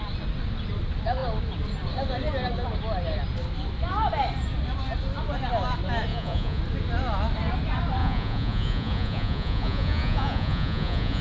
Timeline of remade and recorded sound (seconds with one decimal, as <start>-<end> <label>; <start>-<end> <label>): 0.0-6.1 recorded; 6.1-6.6 remade; 6.6-8.0 recorded; 8.0-11.2 remade